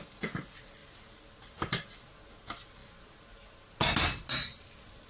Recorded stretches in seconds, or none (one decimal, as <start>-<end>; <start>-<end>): 0.0-5.1